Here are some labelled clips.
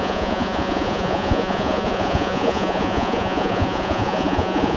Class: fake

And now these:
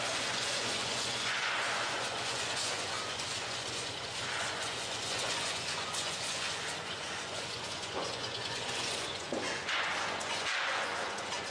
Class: fake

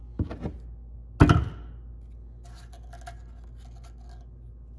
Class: real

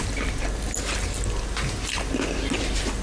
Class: real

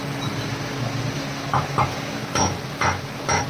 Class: real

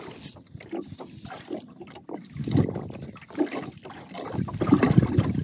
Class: real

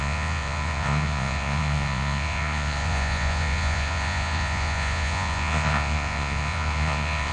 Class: fake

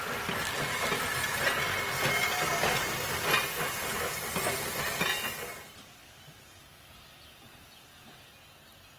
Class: real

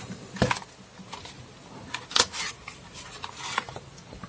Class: real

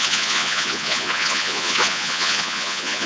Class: fake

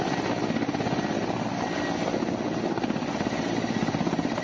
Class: real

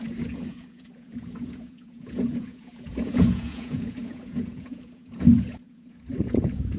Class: fake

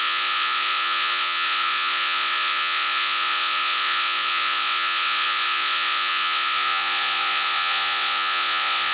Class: fake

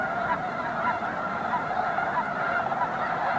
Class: real